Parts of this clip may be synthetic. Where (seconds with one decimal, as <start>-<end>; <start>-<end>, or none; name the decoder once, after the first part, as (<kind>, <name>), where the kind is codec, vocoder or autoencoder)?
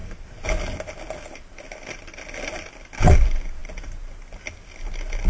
none